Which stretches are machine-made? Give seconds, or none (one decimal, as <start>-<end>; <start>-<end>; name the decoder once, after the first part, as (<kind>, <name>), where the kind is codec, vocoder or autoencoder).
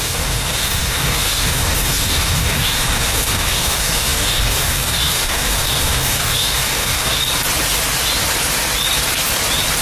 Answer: 0.0-7.2 (codec, DAC)